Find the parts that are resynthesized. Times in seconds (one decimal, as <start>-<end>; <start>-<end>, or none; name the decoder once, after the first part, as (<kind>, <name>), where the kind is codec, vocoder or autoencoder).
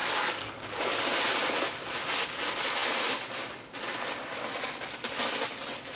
0.0-1.0 (codec, DAC)